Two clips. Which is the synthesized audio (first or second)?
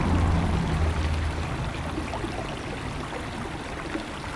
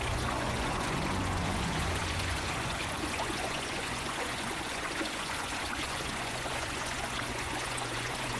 second